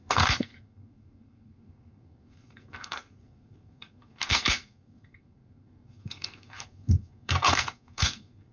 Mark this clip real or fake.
fake